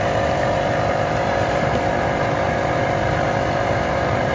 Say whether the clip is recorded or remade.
remade